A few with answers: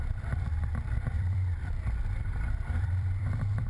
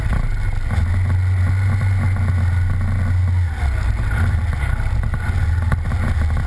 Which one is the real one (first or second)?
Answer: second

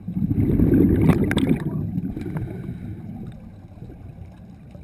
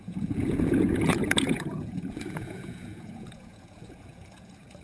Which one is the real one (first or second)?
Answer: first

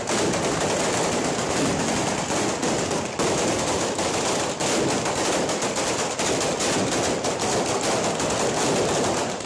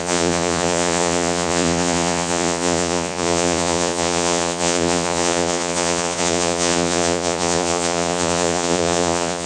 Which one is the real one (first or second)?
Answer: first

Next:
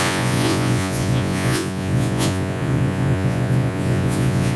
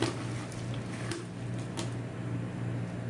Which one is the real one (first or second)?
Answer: second